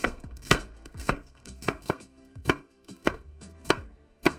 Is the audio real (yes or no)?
no